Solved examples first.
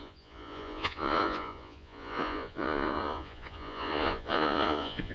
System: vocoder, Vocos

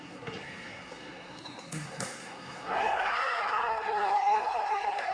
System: codec, SNAC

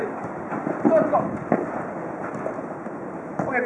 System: none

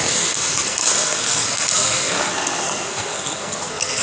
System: codec, SNAC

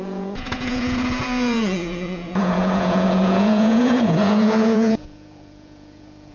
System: vocoder, Vocos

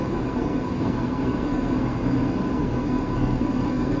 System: codec, SNAC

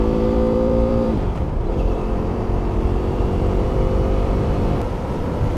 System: vocoder, BigVGAN v2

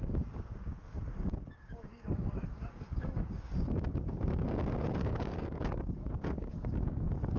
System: codec, DAC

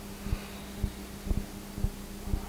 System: none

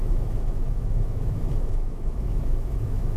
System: autoencoder, DAC-VAE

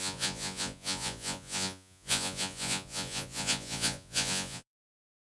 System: vocoder, Vocos